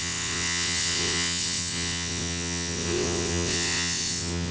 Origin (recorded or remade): remade